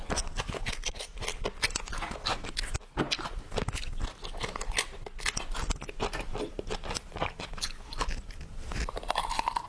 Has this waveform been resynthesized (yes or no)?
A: no